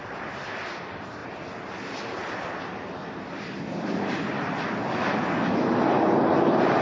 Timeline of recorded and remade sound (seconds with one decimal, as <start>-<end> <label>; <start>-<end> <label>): 0.0-6.8 recorded